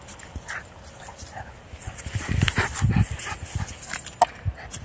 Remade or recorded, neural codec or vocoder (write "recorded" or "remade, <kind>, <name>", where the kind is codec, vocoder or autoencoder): recorded